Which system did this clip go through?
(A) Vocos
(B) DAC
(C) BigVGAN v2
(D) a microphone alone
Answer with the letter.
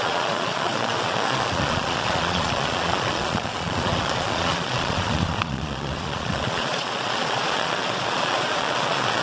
A